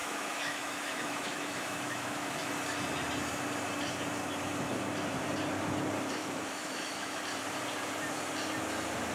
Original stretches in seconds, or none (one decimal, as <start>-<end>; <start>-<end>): 2.5-6.2; 7.2-9.1